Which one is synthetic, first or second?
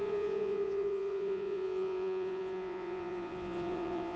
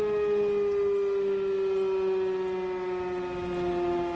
first